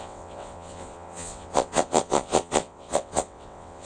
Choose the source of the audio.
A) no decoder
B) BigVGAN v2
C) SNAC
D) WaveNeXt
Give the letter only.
D